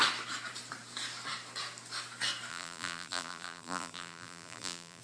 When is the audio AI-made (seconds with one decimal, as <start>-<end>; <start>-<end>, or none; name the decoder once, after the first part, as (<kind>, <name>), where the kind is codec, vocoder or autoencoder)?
2.5-5.0 (vocoder, BigVGAN v2)